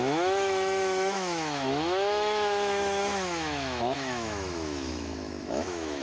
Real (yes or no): no